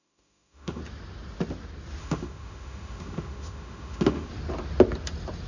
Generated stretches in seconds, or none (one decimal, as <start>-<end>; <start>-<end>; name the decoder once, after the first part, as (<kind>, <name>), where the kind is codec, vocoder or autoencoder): 0.0-0.8 (autoencoder, DAC-VAE); 2.0-4.3